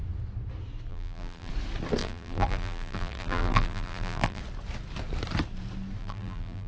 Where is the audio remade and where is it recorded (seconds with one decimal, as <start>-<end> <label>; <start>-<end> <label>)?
0.0-0.9 recorded; 0.9-1.5 remade; 1.5-2.0 recorded; 2.0-4.4 remade; 4.4-6.0 recorded; 6.0-6.7 remade